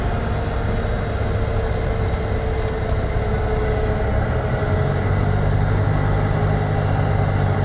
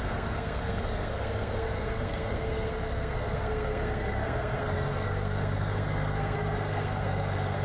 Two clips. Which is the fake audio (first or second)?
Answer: second